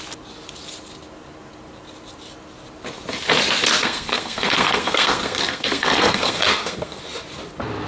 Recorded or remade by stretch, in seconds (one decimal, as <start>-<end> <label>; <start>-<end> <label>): 0.0-3.8 recorded; 3.8-7.0 remade; 7.0-7.9 recorded